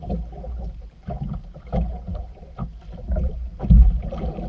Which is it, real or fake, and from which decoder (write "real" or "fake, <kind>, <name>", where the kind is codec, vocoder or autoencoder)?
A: real